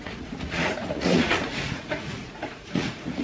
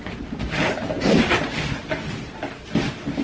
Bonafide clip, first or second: second